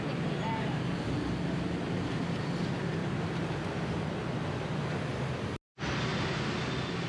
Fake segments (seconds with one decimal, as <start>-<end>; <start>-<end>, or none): none